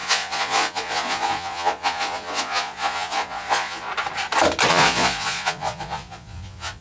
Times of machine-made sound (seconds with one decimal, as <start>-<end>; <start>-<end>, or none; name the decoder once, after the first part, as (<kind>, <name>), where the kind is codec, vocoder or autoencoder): 0.0-3.9 (vocoder, Vocos); 4.7-6.8